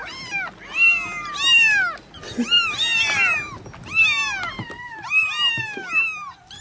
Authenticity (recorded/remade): recorded